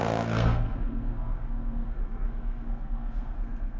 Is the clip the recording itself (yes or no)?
no